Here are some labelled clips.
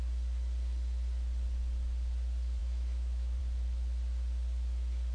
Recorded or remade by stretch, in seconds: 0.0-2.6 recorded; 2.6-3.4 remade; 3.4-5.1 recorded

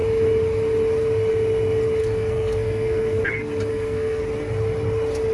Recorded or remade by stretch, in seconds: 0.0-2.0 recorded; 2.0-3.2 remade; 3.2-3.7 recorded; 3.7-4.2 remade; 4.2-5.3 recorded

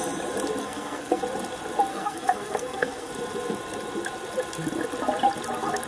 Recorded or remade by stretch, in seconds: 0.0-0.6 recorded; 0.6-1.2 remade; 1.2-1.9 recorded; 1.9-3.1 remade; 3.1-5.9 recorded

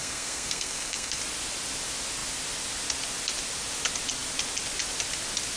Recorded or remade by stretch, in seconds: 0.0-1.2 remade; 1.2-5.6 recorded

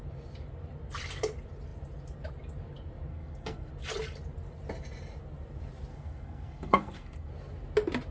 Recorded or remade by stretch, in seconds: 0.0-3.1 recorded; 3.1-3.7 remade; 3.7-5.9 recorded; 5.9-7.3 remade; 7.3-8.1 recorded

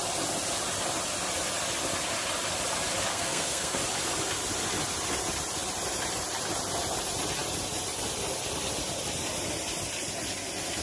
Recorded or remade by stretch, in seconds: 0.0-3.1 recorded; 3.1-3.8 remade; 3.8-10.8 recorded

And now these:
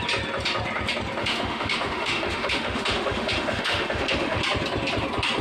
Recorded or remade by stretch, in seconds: 0.0-1.2 recorded; 1.2-4.4 remade; 4.4-5.4 recorded

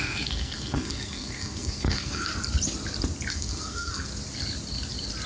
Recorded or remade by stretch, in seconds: 0.0-2.3 remade; 2.3-3.3 recorded; 3.3-4.1 remade; 4.1-5.3 recorded